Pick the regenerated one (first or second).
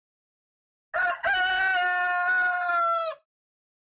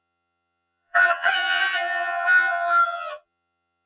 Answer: second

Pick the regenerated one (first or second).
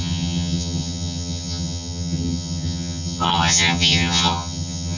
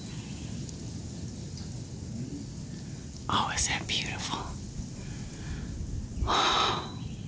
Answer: first